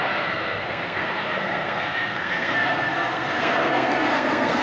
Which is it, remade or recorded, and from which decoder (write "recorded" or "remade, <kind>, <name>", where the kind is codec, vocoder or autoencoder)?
remade, codec, SNAC